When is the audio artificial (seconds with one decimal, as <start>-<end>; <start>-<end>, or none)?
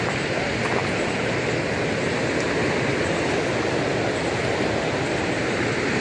none